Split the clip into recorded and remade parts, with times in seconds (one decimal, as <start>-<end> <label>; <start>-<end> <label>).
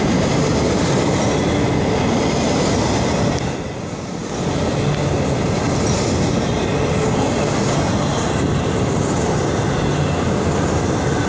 0.0-11.3 recorded